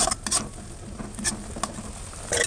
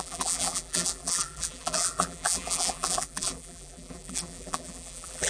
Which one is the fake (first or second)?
second